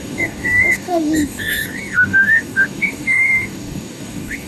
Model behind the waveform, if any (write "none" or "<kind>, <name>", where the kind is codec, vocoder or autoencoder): codec, DAC